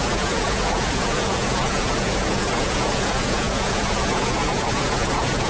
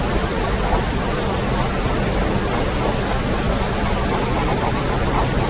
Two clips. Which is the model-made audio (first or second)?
first